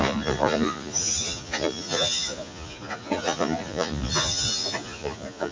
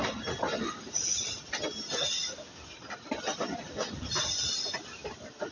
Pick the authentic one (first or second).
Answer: second